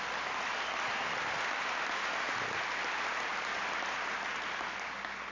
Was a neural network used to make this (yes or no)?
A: no